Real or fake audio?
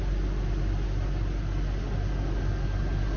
real